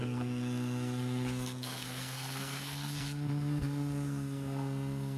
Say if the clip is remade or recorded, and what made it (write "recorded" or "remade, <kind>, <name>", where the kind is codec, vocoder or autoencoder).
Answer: remade, codec, SNAC